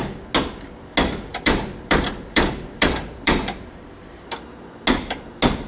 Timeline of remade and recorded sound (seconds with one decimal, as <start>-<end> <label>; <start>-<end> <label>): 0.0-1.3 recorded; 1.3-4.7 remade; 4.7-5.7 recorded